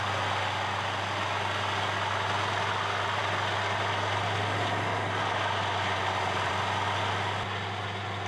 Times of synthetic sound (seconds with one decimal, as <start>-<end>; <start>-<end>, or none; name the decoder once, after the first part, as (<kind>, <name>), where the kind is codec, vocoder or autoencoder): none